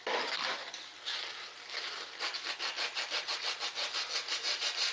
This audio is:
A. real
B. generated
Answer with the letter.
A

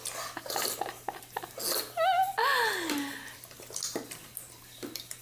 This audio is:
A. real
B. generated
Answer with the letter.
A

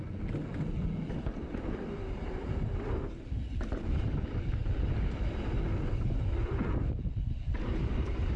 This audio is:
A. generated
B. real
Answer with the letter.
B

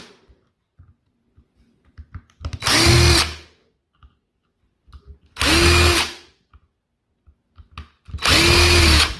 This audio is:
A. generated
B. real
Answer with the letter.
B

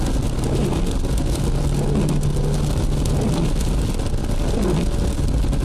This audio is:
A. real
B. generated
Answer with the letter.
A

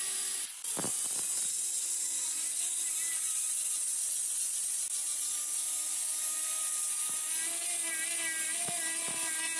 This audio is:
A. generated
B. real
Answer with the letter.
B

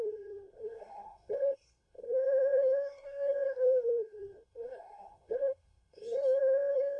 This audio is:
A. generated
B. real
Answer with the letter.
A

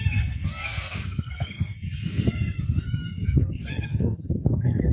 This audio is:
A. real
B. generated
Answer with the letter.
B